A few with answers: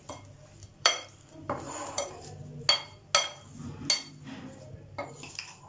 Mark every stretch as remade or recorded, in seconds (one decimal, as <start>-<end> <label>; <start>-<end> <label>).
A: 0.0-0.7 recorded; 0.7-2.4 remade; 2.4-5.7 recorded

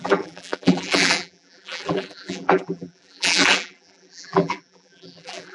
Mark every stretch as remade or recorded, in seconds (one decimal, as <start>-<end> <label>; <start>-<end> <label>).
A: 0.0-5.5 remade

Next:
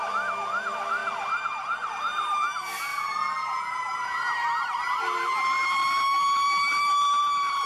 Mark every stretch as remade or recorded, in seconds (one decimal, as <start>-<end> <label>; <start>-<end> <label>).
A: 0.0-1.0 recorded; 1.0-1.9 remade; 1.9-2.9 recorded; 2.9-7.2 remade; 7.2-7.7 recorded

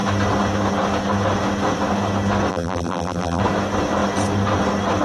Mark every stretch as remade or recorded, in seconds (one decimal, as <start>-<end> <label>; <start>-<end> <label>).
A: 0.0-2.5 recorded; 2.5-3.4 remade; 3.4-5.0 recorded

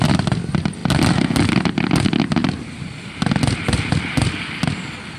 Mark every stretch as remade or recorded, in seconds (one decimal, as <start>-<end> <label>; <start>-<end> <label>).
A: 0.0-5.2 recorded